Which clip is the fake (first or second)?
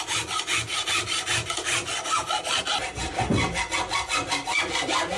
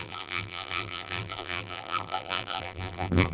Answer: second